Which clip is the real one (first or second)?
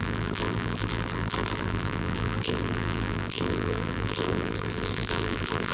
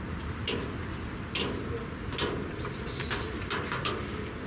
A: second